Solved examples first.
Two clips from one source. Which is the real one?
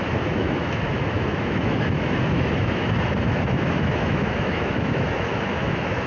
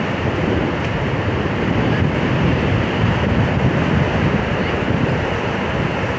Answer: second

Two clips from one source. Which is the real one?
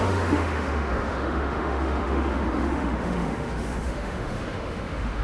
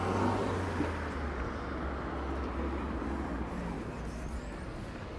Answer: second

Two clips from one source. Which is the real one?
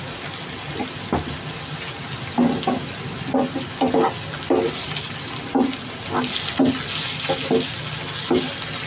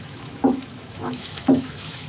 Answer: first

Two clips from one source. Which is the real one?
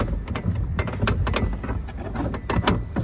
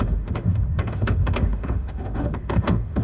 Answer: first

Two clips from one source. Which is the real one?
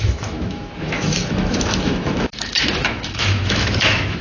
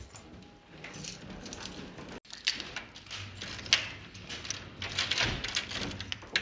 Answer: second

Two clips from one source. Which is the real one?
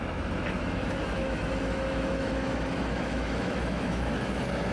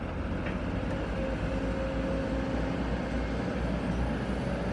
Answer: second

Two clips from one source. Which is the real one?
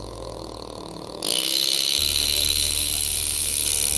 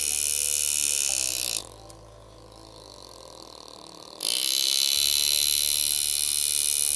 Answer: second